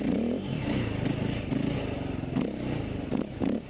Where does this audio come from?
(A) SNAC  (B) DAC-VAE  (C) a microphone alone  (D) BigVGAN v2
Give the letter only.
C